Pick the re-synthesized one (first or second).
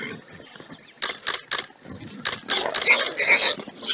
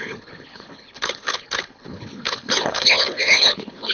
second